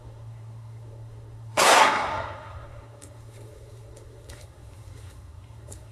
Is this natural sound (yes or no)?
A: no